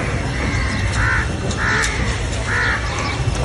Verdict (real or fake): real